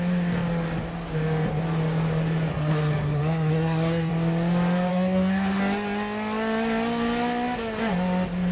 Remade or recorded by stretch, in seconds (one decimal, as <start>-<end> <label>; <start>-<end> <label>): 0.0-2.5 recorded; 2.5-4.1 remade; 4.1-4.9 recorded; 4.9-5.6 remade; 5.6-8.5 recorded